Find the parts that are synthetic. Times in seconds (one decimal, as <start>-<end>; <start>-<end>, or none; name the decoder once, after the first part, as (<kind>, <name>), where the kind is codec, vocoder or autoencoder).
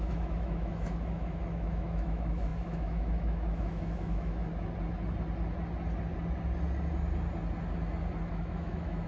0.0-4.5 (autoencoder, DAC-VAE); 8.3-9.1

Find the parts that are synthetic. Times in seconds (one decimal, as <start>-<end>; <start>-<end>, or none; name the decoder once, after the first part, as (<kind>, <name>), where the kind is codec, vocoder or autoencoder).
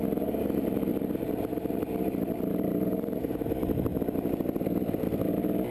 0.9-3.5 (vocoder, BigVGAN v2)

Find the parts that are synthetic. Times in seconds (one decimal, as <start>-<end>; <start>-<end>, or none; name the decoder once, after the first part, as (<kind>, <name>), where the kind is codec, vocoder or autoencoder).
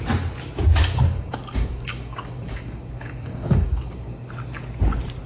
1.1-4.3 (codec, DAC)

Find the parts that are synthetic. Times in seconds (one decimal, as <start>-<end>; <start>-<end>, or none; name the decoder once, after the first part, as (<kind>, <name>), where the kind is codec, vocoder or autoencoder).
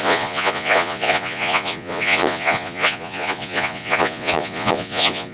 0.0-5.3 (vocoder, Vocos)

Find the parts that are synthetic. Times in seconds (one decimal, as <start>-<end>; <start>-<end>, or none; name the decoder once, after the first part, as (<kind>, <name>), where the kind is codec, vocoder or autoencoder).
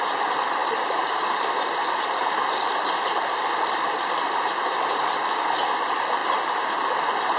0.6-5.0 (vocoder, BigVGAN v2); 6.2-6.8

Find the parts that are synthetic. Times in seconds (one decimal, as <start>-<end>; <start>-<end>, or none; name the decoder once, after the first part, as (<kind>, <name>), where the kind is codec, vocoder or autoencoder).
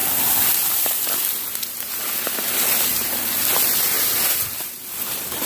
none